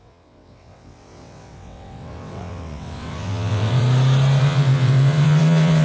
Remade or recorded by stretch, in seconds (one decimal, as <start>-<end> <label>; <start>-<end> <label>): 0.0-3.8 remade; 3.8-4.4 recorded; 4.4-5.8 remade

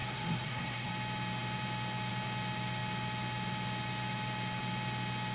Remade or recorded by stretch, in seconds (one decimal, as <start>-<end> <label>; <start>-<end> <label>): 0.0-0.9 remade; 0.9-5.3 recorded

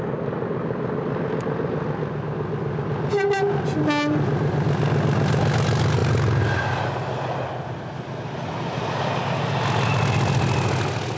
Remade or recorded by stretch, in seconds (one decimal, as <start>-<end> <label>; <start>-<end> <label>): 0.0-11.2 recorded

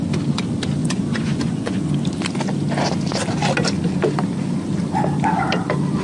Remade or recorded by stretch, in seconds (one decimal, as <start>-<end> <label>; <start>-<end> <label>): 0.0-0.8 recorded; 0.8-1.9 remade; 1.9-6.0 recorded

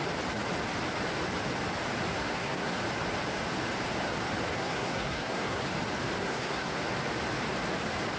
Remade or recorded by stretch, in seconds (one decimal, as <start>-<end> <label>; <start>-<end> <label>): 0.0-2.1 recorded; 2.1-2.8 remade; 2.8-4.5 recorded; 4.5-5.7 remade; 5.7-6.2 recorded; 6.2-6.8 remade; 6.8-8.2 recorded

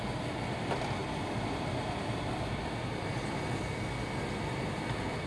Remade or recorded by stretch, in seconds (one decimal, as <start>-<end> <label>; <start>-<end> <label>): 0.0-5.3 recorded

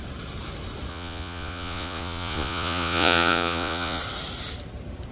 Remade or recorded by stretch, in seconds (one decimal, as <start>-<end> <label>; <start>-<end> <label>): 0.0-0.9 recorded; 0.9-4.0 remade; 4.0-5.1 recorded

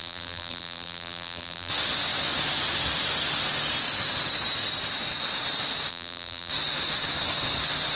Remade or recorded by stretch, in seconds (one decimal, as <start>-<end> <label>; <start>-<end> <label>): 0.0-1.7 remade; 1.7-5.9 recorded; 5.9-6.5 remade; 6.5-8.0 recorded